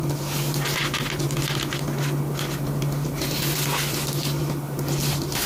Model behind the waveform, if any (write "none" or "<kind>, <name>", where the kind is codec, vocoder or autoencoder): none